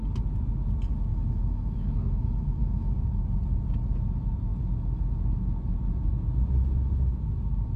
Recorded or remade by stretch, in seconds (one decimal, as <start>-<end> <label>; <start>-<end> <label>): 0.0-1.1 recorded; 1.1-3.0 remade; 3.0-7.8 recorded